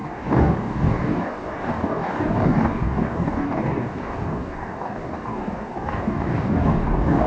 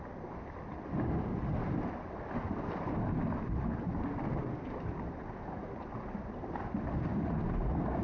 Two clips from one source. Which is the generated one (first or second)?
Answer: first